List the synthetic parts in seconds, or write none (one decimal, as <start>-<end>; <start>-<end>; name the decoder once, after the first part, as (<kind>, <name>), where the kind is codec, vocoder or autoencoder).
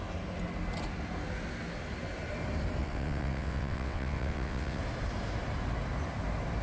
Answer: 2.8-4.8 (vocoder, WaveNeXt)